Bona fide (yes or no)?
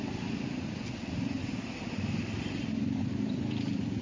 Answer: no